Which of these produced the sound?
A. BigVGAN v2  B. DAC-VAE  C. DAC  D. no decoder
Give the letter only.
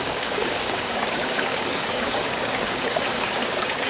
C